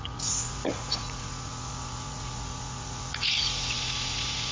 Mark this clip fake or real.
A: fake